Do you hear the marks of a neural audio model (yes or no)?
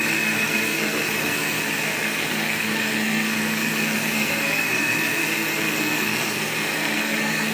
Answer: yes